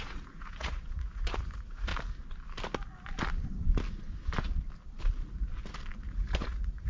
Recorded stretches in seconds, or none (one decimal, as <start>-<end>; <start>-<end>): 1.9-6.0